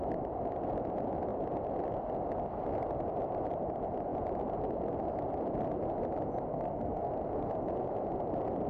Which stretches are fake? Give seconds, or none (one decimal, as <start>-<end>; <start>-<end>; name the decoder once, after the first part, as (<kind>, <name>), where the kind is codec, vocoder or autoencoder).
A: 6.5-7.1 (codec, SNAC)